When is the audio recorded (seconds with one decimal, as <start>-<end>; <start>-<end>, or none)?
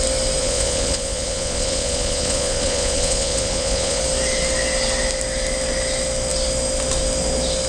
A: 0.0-0.4; 4.0-7.7